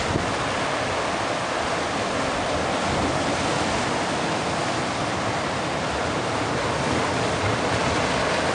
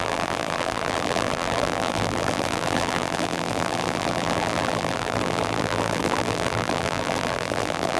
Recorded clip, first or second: first